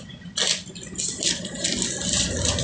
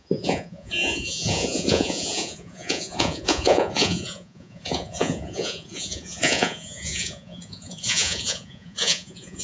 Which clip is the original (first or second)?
first